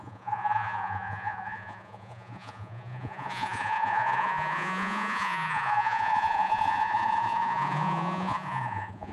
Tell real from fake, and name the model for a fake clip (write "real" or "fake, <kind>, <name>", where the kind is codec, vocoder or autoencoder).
fake, vocoder, Vocos